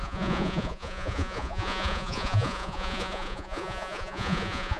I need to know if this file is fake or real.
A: fake